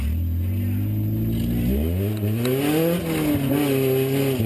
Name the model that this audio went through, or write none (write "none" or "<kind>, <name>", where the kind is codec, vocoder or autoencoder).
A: none